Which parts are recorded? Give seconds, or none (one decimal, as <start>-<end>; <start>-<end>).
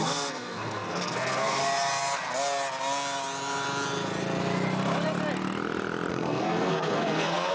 1.6-6.1